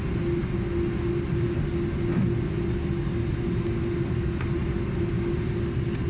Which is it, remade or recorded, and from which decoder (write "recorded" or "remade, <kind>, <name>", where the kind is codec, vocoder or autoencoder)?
recorded